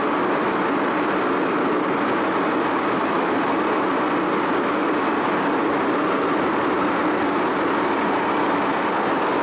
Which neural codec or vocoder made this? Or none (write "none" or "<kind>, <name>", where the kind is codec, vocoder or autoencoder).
none